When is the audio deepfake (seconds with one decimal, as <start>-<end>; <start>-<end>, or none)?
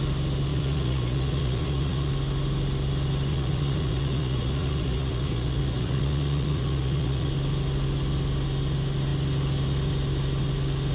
0.5-2.1; 3.3-7.3